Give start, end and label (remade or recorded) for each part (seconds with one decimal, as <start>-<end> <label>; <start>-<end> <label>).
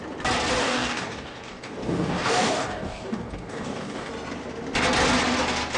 0.0-0.6 recorded; 0.6-4.1 remade; 4.1-5.8 recorded